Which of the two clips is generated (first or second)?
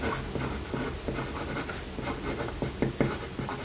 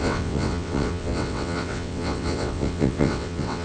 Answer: second